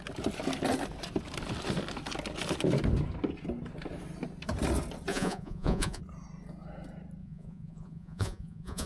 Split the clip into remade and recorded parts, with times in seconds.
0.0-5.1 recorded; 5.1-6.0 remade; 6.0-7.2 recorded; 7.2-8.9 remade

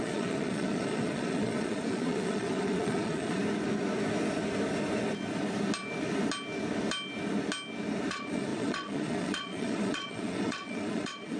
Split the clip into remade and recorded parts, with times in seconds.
0.0-3.4 remade; 3.4-8.1 recorded; 8.1-11.4 remade

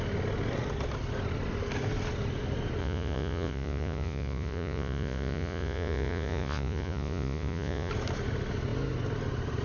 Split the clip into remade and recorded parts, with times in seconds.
0.0-2.8 recorded; 2.8-7.9 remade; 7.9-9.6 recorded

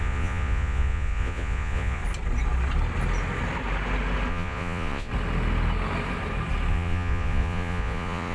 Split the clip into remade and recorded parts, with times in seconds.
0.0-2.0 remade; 2.0-4.3 recorded; 4.3-5.1 remade; 5.1-6.7 recorded; 6.7-8.3 remade

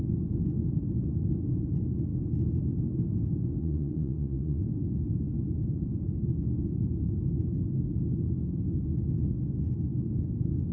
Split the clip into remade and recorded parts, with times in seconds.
0.0-3.6 recorded; 3.6-4.6 remade; 4.6-10.7 recorded

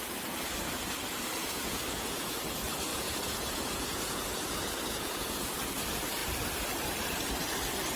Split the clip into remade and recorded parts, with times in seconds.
0.0-1.4 recorded; 1.4-2.4 remade; 2.4-2.9 recorded; 2.9-5.7 remade; 5.7-8.0 recorded

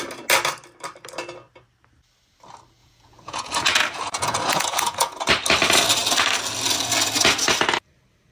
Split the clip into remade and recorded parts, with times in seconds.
0.0-2.8 recorded; 2.8-5.3 remade; 5.3-8.3 recorded